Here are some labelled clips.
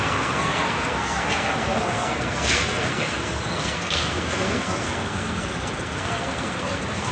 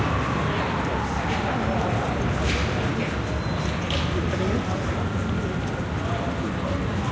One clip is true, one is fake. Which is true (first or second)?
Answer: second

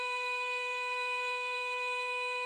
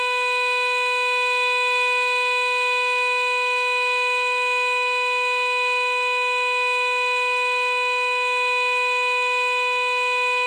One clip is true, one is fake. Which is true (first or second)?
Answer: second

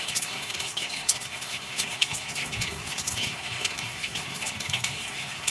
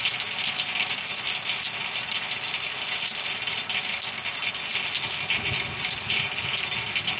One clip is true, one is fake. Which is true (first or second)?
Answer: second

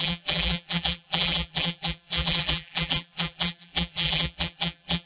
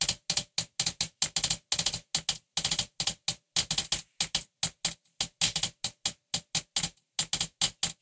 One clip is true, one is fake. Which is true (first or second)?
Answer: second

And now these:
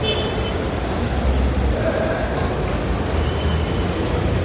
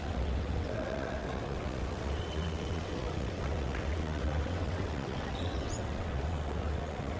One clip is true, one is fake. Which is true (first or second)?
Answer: first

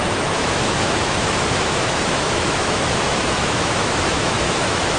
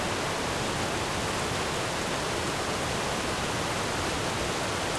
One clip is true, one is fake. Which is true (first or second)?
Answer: second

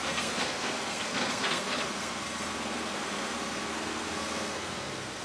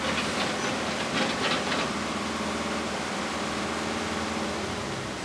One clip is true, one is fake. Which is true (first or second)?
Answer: second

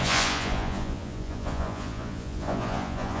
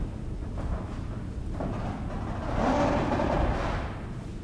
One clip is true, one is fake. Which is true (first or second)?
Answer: second